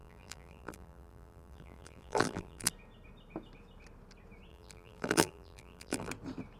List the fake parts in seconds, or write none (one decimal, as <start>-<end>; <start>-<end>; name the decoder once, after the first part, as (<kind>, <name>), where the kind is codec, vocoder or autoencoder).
0.0-2.7 (vocoder, BigVGAN v2); 4.5-6.1